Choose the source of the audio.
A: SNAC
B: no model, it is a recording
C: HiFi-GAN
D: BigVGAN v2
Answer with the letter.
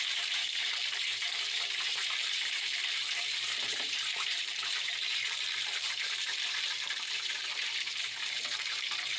D